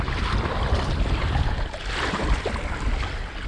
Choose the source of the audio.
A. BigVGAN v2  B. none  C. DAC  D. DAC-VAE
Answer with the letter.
B